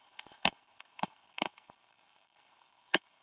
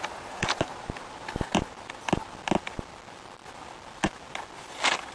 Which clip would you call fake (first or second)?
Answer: first